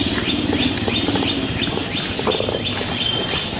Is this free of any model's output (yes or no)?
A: yes